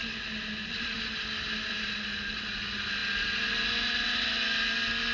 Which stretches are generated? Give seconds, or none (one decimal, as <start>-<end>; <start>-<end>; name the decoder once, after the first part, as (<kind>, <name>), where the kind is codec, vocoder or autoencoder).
none